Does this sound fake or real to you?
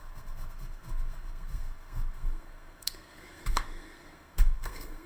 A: fake